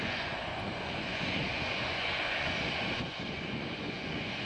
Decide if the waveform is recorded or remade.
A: remade